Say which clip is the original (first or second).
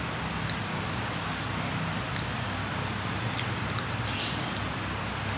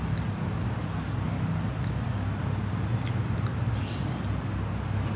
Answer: second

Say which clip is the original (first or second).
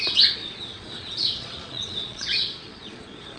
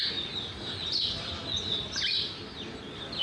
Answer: second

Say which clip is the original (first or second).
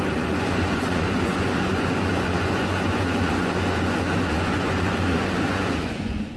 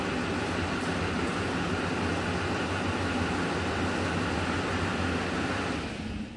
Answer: second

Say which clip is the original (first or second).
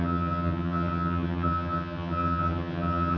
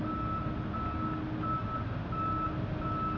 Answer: second